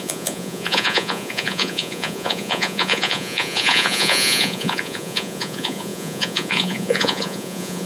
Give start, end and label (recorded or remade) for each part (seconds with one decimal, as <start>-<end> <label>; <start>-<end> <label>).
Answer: 0.0-7.9 remade